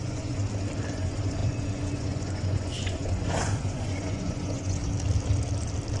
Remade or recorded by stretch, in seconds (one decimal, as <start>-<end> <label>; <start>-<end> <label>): 0.0-0.4 remade; 0.4-0.9 recorded; 0.9-4.8 remade; 4.8-6.0 recorded